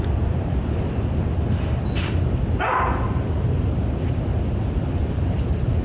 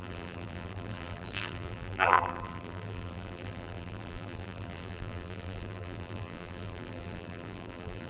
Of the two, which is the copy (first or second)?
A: second